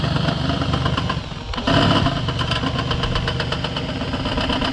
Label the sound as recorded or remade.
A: recorded